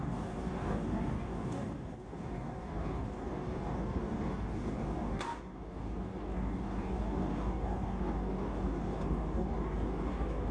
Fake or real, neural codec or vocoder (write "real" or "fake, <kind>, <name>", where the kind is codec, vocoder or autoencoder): fake, codec, DAC